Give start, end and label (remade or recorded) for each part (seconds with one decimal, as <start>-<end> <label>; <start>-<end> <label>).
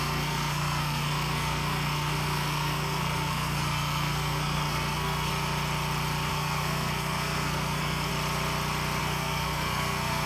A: 0.0-5.3 remade; 5.3-6.3 recorded; 6.3-8.1 remade; 8.1-9.0 recorded; 9.0-10.3 remade